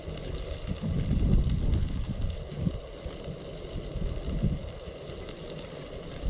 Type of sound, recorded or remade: recorded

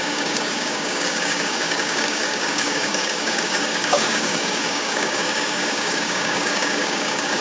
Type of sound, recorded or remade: remade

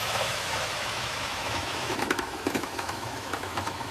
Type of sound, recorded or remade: remade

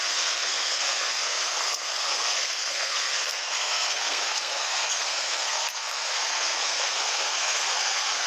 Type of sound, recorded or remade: remade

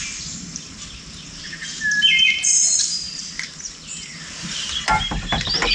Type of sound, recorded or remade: remade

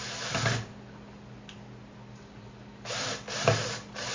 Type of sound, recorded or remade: recorded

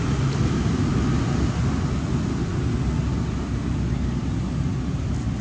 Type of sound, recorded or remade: recorded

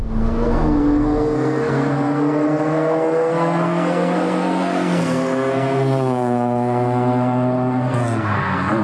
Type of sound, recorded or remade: remade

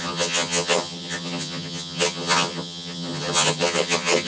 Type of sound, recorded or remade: remade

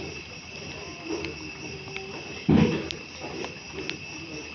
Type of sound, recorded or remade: recorded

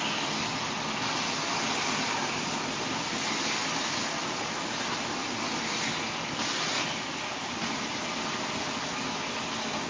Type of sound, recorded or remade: recorded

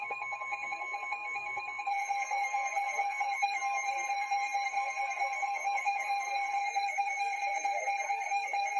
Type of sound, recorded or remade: remade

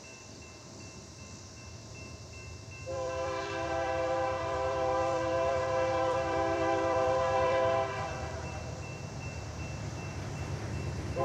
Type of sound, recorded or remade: remade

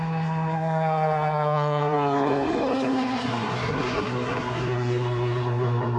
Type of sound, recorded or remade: remade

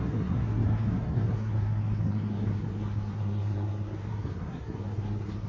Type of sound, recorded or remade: remade